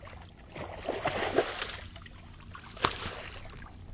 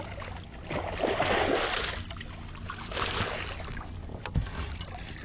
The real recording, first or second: second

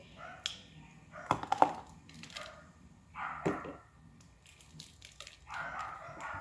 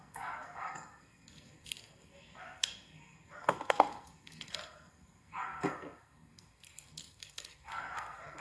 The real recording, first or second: first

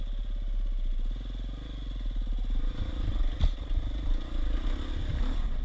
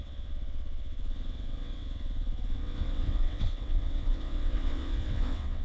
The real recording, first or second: first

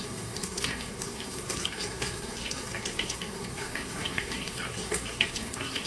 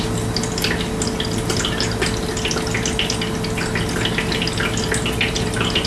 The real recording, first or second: second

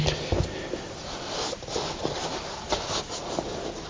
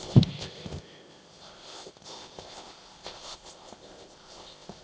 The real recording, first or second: first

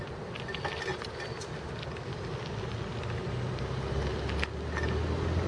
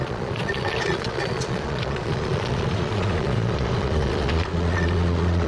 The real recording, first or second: first